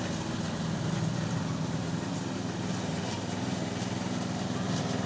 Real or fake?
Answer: real